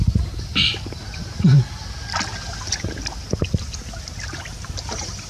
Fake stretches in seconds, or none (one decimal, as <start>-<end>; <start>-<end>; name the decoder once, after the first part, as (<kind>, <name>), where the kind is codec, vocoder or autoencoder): none